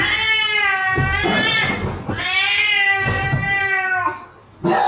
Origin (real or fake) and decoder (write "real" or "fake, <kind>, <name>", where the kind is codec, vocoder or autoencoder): real